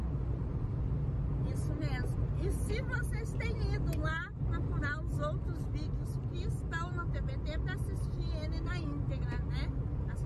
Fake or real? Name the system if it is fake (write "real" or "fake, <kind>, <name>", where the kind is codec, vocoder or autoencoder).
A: real